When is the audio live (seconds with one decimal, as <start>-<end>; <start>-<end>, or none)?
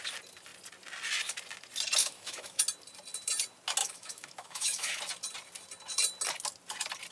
0.0-2.0; 2.6-3.8; 5.0-7.1